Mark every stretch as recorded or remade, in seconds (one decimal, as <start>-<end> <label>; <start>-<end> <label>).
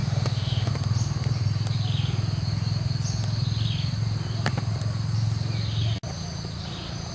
0.0-0.7 remade; 0.7-7.1 recorded